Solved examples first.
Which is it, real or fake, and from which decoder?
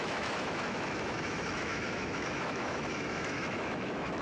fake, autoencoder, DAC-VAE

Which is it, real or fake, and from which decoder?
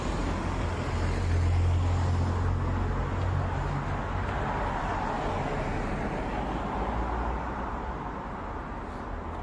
real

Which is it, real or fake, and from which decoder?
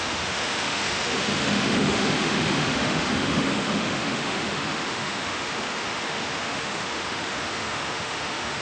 fake, autoencoder, DAC-VAE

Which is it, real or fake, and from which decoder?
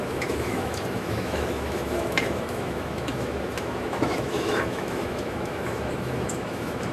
fake, autoencoder, DAC-VAE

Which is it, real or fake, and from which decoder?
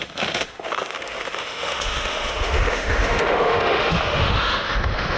fake, autoencoder, DAC-VAE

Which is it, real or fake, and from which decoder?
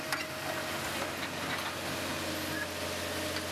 real